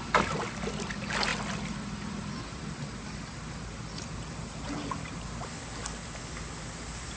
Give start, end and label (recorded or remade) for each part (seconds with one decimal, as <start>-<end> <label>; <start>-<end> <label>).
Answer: 0.0-7.2 recorded